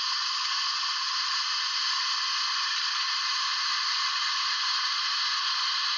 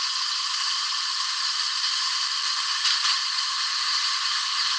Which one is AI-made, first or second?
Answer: second